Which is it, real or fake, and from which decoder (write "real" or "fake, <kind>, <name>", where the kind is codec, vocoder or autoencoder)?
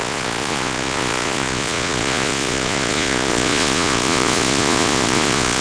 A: fake, vocoder, Vocos